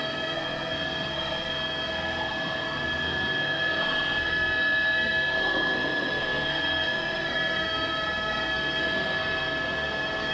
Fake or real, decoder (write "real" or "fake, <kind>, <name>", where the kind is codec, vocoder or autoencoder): fake, codec, SNAC